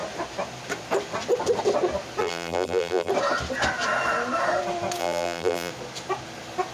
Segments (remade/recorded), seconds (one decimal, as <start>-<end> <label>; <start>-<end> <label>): 0.0-2.2 recorded; 2.2-3.1 remade; 3.1-5.0 recorded; 5.0-5.7 remade; 5.7-6.7 recorded